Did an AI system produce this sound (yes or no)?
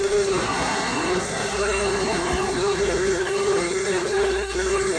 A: yes